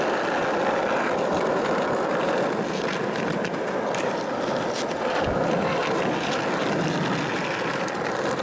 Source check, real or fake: real